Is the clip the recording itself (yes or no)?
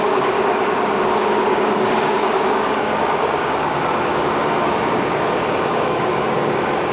no